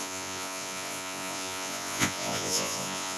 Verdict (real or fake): fake